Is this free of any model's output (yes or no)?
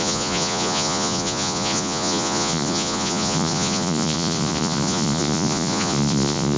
no